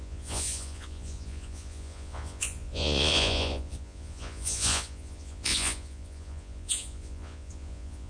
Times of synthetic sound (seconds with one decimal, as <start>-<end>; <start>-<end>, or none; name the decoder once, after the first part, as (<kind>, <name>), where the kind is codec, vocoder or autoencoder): 0.0-8.1 (vocoder, Vocos)